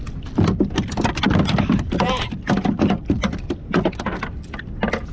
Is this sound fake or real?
real